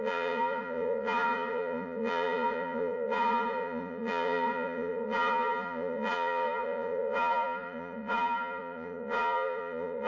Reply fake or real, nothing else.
fake